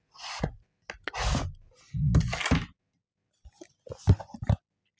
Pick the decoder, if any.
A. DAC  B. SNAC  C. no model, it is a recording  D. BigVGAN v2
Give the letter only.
C